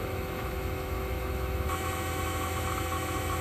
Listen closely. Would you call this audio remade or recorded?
remade